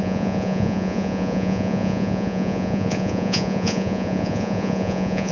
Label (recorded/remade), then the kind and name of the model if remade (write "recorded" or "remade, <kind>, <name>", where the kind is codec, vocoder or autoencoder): remade, vocoder, Vocos